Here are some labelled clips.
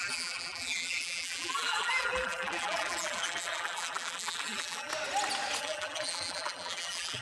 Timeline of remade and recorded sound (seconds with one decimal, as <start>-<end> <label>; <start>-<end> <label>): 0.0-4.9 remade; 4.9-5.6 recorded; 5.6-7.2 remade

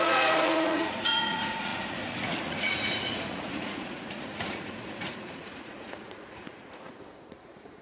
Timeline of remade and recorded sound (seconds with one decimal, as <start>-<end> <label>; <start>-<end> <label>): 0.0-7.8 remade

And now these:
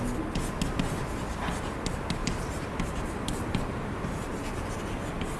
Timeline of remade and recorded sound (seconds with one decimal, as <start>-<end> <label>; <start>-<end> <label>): 0.0-2.2 recorded; 2.2-4.7 remade; 4.7-5.4 recorded